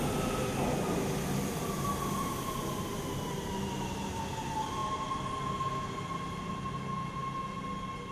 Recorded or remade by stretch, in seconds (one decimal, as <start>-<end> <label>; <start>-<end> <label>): 0.0-8.1 recorded